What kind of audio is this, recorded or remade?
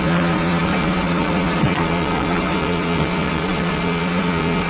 remade